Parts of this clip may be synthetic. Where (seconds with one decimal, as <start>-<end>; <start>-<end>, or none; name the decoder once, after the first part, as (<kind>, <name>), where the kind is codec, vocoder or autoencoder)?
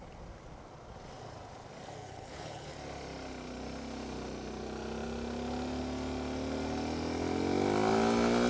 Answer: 2.0-2.7 (codec, HILCodec)